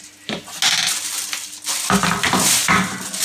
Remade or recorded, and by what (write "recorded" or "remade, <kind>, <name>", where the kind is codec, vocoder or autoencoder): recorded